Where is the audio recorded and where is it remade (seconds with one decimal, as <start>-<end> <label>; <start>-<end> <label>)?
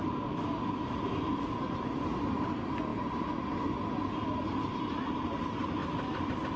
0.0-6.6 recorded